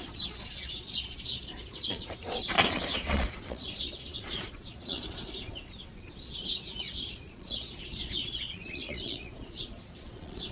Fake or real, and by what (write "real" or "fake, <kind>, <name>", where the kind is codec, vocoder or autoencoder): fake, vocoder, Vocos